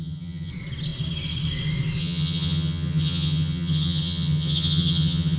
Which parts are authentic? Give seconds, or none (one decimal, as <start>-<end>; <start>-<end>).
0.5-2.0